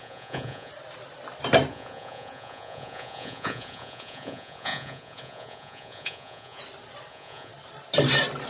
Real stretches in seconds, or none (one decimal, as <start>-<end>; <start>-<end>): 0.7-1.7; 6.6-7.1; 7.5-8.5